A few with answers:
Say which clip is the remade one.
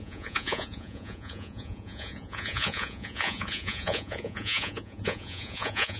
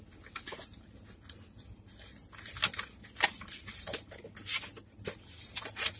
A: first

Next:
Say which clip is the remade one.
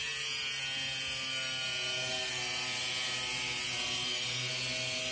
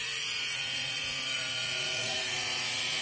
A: second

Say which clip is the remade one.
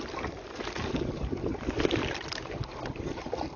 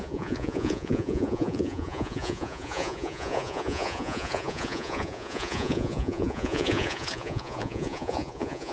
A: second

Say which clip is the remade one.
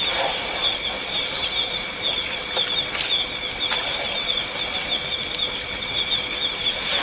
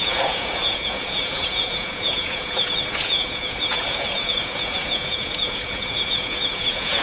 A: second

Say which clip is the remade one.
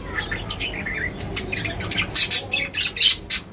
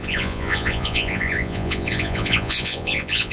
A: second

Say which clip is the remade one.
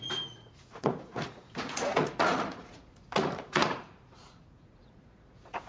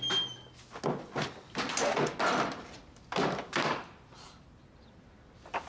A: first